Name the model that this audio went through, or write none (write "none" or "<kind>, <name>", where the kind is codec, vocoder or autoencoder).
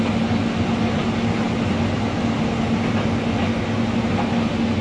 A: none